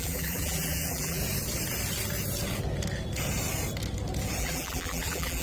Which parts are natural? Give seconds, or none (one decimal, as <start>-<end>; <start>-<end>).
1.2-4.4